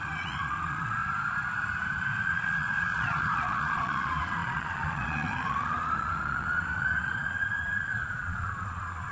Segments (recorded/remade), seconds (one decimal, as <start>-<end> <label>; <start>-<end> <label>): 0.0-1.0 remade; 1.0-2.0 recorded; 2.0-9.1 remade